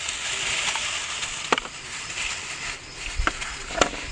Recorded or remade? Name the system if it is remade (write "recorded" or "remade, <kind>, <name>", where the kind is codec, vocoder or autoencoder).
recorded